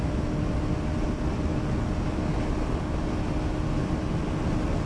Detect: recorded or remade recorded